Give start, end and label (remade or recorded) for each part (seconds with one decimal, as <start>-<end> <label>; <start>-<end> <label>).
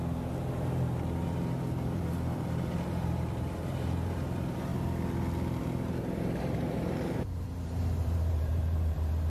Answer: 0.0-4.7 remade; 4.7-6.2 recorded; 6.2-9.3 remade